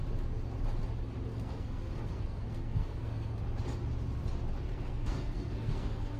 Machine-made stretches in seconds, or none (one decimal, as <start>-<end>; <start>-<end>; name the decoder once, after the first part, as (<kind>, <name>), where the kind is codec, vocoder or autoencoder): 1.3-3.4 (codec, SNAC); 4.7-6.2